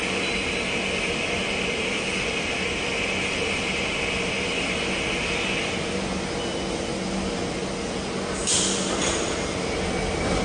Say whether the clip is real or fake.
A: real